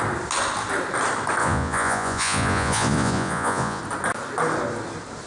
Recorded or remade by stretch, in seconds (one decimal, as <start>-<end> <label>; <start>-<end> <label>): 0.0-1.4 recorded; 1.4-3.8 remade; 3.8-5.3 recorded

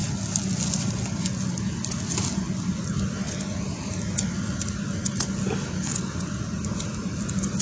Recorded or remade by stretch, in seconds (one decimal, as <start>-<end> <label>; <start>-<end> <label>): 0.0-7.6 recorded

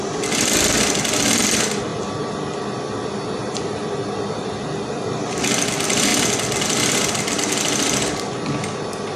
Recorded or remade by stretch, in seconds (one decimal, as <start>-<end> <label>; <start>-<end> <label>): 0.0-9.2 recorded